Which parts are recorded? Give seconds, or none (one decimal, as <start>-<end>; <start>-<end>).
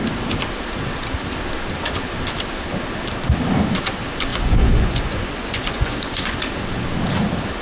0.0-4.3; 6.4-7.6